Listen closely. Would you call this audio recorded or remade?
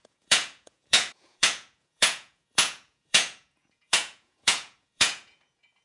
remade